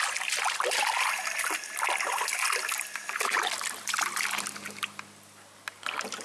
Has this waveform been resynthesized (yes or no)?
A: no